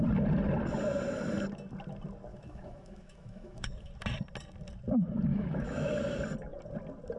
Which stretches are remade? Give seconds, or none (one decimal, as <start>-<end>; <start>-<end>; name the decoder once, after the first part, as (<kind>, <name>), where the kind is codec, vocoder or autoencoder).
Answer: 2.3-3.9 (autoencoder, DAC-VAE); 5.3-6.0